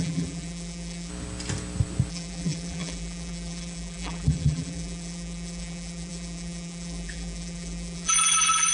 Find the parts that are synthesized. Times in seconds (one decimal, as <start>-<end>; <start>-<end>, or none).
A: 0.0-1.1; 2.1-8.7